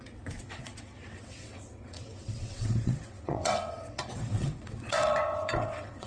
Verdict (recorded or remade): remade